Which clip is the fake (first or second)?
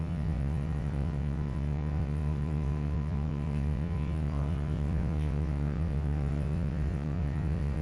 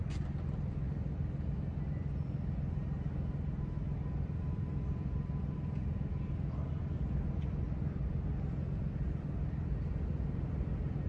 first